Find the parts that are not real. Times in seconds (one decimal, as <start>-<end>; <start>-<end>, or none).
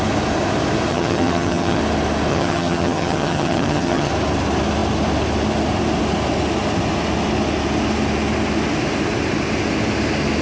0.9-1.8; 2.3-4.1